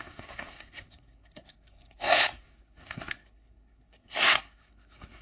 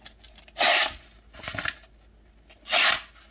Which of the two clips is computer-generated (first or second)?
first